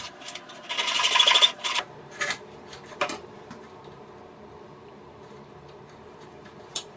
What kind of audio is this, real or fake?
fake